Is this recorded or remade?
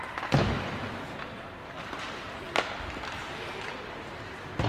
recorded